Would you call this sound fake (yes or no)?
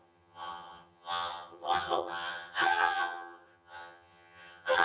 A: yes